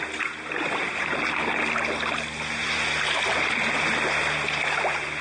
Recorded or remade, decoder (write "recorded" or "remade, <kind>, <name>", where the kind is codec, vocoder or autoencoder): recorded